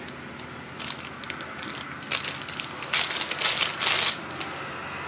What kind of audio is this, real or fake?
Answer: real